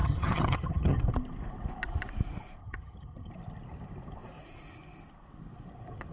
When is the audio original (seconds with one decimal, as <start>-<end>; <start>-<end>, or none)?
1.0-2.6; 3.3-6.1